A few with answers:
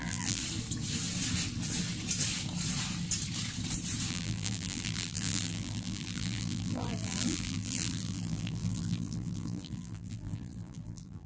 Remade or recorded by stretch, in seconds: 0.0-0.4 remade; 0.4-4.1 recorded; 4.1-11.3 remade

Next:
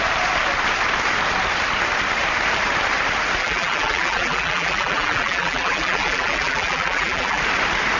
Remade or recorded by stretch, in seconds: 0.0-3.4 recorded; 3.4-7.4 remade; 7.4-8.0 recorded

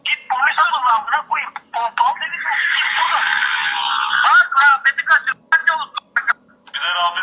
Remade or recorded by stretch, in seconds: 0.0-0.6 recorded; 0.6-4.9 remade; 4.9-7.2 recorded

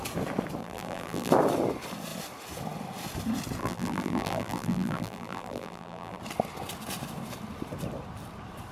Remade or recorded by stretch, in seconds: 0.0-0.6 recorded; 0.6-1.3 remade; 1.3-3.6 recorded; 3.6-6.2 remade; 6.2-8.7 recorded